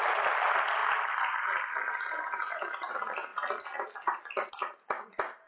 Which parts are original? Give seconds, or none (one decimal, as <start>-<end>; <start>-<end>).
0.0-5.5